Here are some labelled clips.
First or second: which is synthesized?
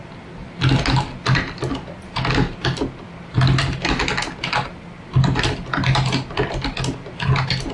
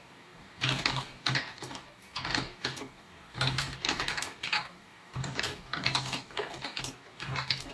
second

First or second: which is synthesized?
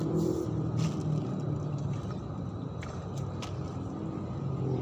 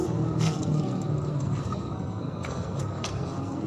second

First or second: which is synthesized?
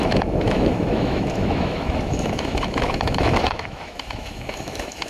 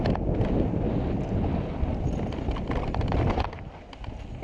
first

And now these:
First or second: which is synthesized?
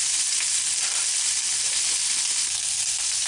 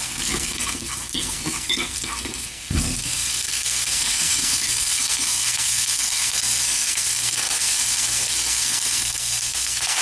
second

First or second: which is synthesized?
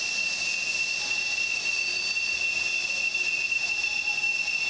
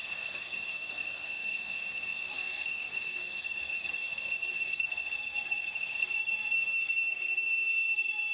second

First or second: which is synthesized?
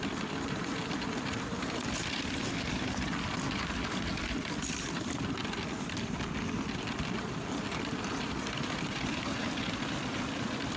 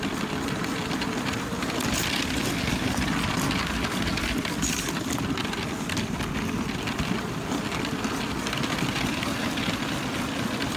first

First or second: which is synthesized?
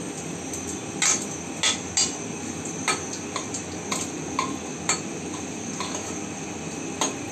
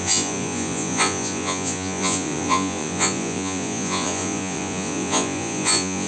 second